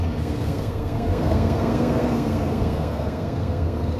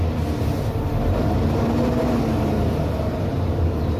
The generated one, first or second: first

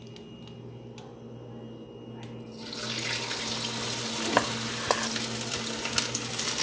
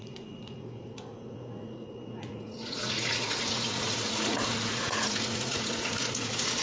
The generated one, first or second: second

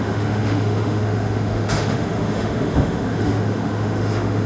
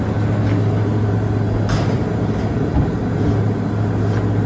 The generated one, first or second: first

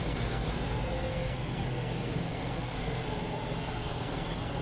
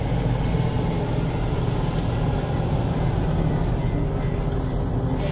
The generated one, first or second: first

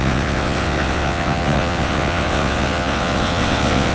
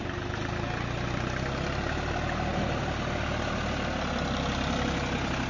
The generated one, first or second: first